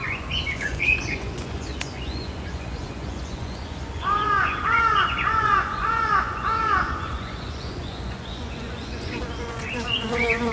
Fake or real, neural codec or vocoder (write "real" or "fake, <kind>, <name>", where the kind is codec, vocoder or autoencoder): fake, vocoder, Vocos